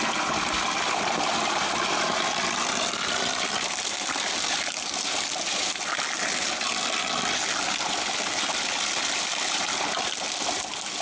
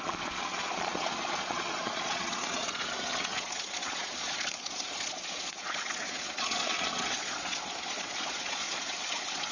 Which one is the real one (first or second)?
first